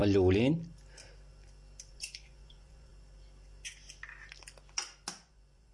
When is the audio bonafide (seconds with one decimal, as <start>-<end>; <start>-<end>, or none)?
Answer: 0.0-1.9; 2.9-5.2